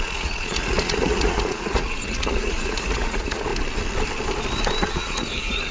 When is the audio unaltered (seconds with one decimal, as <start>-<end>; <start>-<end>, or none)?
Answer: 3.5-4.9